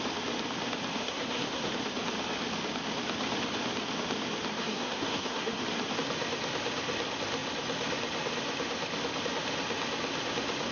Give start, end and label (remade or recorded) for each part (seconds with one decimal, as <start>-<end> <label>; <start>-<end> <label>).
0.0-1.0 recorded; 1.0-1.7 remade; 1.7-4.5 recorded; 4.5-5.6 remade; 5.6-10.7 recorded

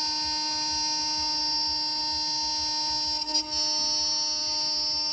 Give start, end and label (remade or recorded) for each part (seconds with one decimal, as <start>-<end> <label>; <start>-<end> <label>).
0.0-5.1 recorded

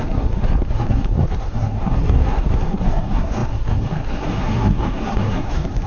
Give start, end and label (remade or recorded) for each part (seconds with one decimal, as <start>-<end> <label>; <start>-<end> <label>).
0.0-5.9 remade